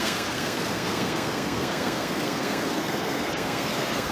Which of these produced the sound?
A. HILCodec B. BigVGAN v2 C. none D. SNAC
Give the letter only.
D